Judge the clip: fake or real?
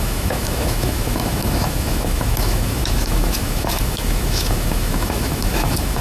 fake